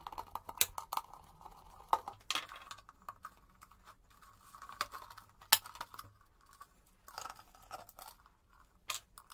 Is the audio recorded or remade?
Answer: recorded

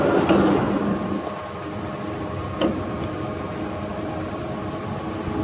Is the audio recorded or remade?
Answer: recorded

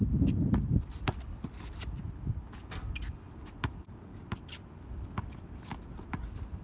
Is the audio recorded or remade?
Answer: recorded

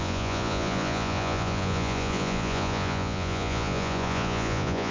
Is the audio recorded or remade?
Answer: remade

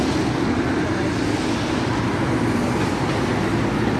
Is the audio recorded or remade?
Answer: recorded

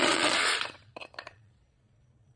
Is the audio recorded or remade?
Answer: remade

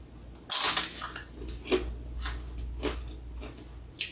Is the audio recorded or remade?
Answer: recorded